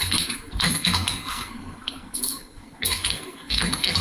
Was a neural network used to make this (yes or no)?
yes